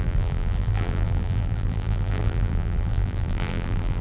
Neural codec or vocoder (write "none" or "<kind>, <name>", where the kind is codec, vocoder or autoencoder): vocoder, BigVGAN v2